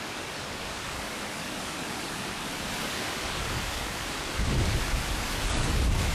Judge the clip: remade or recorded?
remade